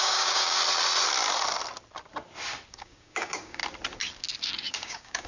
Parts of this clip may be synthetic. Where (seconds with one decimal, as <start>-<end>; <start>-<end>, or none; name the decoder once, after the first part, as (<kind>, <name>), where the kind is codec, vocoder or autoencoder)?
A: 0.0-0.6 (codec, DAC); 2.7-3.6; 4.7-5.3